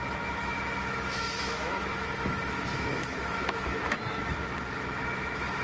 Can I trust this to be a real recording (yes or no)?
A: no